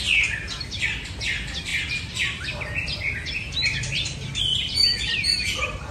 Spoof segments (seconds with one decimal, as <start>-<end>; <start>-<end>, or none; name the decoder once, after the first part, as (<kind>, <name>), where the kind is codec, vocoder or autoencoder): 1.7-4.4 (vocoder, BigVGAN v2)